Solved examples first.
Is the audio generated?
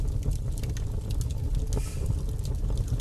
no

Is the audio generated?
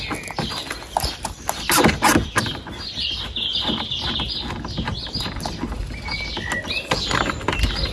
no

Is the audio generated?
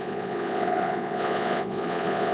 yes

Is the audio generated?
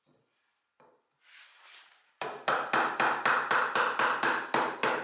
no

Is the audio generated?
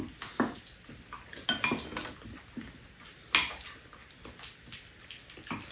no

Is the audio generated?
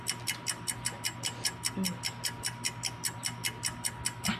no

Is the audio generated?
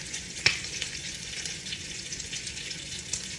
yes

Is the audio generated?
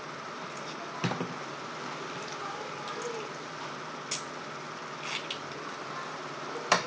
no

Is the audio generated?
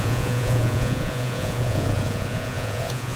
yes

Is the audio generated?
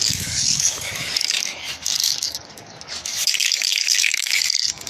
yes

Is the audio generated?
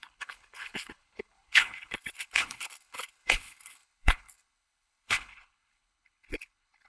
yes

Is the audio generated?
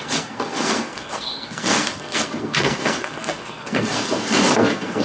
yes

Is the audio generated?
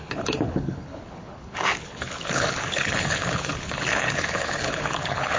yes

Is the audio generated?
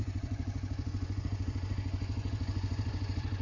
yes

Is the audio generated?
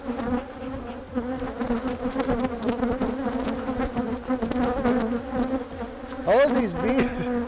no